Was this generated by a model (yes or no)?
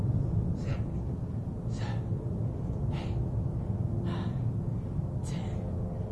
no